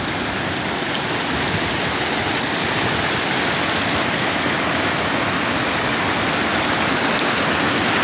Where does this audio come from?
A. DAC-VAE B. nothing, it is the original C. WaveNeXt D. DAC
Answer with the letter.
B